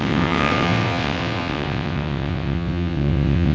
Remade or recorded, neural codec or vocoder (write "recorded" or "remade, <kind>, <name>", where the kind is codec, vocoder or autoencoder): remade, vocoder, WaveNeXt